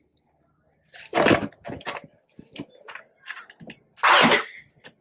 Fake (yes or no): no